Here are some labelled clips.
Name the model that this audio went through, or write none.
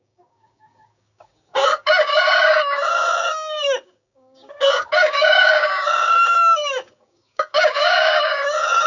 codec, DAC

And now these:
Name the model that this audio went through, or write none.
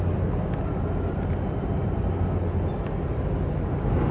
none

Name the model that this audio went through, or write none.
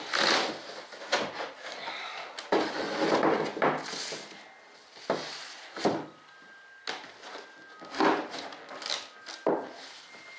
none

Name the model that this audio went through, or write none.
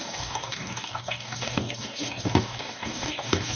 codec, DAC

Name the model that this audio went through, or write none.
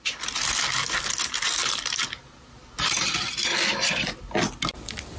none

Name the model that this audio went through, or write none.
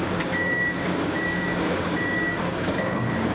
codec, DAC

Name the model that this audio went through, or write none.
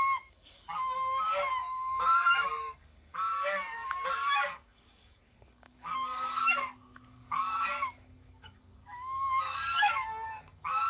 codec, DAC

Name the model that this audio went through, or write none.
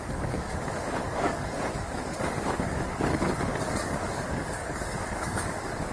codec, DAC